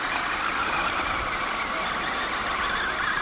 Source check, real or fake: real